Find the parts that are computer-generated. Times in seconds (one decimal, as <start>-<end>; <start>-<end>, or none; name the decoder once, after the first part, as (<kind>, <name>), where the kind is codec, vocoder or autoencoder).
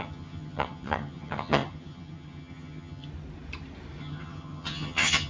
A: 0.0-3.1 (vocoder, HiFi-GAN); 4.0-5.3